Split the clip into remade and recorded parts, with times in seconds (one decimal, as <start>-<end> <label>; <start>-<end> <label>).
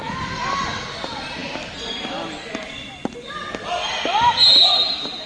0.0-5.3 recorded